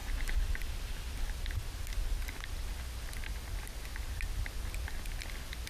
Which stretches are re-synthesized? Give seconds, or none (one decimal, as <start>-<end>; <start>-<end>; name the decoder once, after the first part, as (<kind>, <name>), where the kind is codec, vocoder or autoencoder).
none